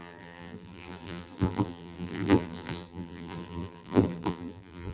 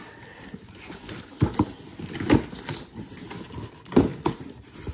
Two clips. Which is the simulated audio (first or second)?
first